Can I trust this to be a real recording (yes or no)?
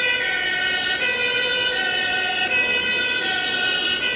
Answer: yes